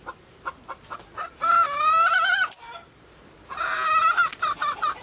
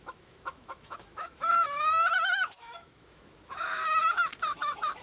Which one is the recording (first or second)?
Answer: first